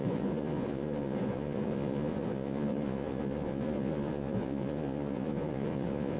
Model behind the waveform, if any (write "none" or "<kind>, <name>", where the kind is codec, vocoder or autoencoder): vocoder, Vocos